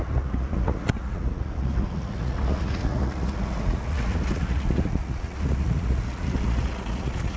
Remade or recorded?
remade